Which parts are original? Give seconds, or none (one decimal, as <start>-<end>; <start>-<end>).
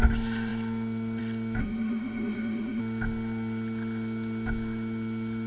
0.0-1.6; 2.8-5.5